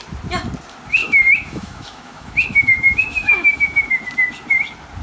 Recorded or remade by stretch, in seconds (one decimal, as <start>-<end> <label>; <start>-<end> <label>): 0.0-1.0 recorded; 1.0-4.0 remade; 4.0-5.0 recorded